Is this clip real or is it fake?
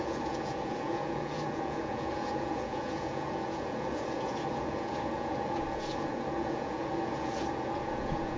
fake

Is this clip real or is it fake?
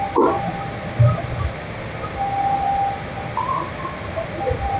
real